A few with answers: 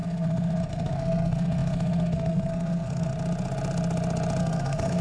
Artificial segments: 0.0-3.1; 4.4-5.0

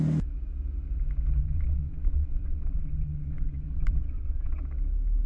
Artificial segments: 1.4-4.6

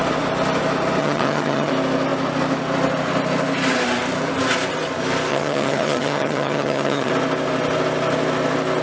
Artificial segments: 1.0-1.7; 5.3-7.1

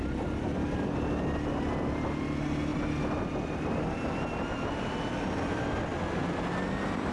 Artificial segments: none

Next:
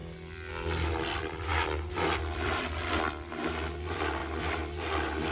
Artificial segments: 0.0-0.5; 1.5-2.9; 4.2-5.3

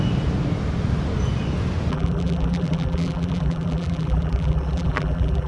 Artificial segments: 1.9-5.5

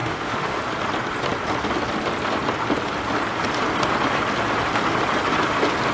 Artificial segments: 0.0-0.6

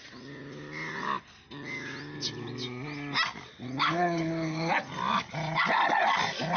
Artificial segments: 3.5-4.7